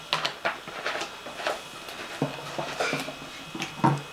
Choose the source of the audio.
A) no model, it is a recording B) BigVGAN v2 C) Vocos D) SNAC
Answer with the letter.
A